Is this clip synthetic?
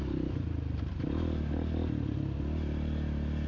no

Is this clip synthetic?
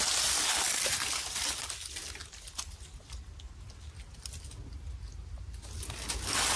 no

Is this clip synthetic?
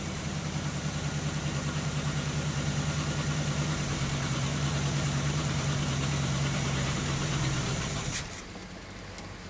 yes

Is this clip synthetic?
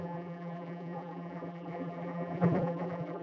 yes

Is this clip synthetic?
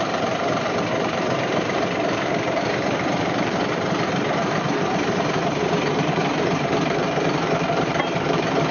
yes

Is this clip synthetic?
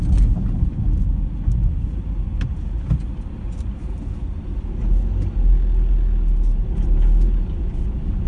no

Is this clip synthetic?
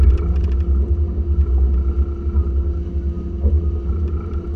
no